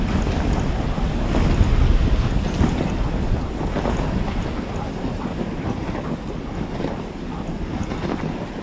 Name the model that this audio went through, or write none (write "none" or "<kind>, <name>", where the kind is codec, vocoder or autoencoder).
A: none